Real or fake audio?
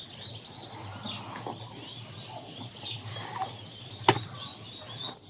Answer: real